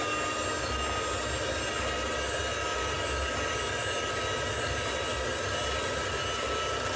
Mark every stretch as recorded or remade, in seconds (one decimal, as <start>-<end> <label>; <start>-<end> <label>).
0.0-7.0 recorded